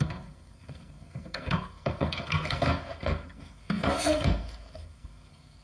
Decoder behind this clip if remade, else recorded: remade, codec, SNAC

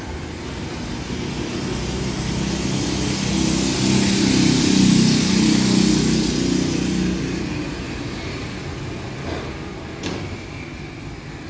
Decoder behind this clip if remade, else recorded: recorded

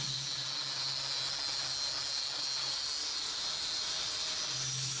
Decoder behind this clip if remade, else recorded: recorded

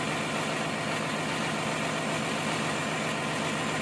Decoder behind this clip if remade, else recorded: recorded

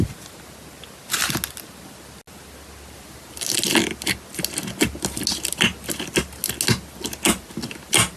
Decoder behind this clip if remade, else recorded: recorded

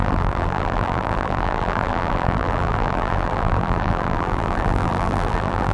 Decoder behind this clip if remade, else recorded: remade, vocoder, BigVGAN v2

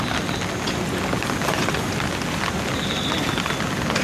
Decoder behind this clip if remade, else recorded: recorded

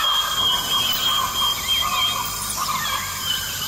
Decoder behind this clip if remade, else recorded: remade, vocoder, BigVGAN v2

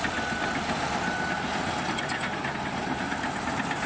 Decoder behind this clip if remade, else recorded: recorded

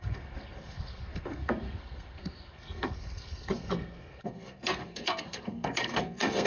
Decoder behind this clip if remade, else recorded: remade, codec, SNAC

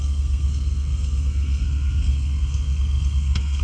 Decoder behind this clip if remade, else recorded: remade, codec, SNAC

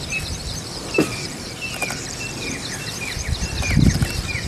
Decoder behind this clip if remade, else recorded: recorded